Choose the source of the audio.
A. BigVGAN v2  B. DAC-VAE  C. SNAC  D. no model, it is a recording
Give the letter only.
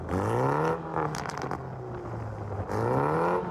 D